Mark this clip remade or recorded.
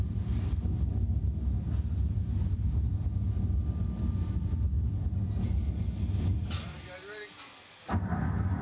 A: recorded